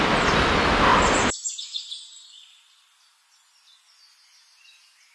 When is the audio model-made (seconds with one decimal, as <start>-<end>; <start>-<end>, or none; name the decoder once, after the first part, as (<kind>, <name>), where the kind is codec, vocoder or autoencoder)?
none